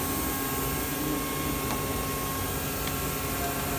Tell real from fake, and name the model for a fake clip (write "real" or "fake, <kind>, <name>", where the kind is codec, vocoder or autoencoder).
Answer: real